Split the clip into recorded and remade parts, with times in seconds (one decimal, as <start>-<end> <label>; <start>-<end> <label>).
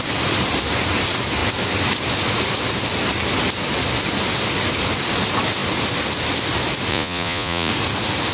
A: 0.0-6.9 recorded; 6.9-7.7 remade; 7.7-8.3 recorded